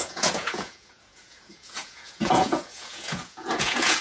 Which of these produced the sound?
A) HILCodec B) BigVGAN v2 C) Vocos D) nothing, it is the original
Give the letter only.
C